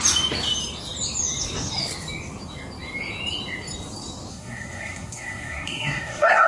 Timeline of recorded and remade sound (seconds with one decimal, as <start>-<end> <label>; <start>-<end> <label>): 0.0-4.3 recorded; 4.3-6.5 remade